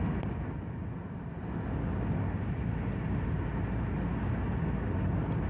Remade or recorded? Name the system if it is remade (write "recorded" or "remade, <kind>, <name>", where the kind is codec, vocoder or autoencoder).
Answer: recorded